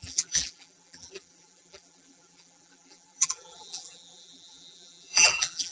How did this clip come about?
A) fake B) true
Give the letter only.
A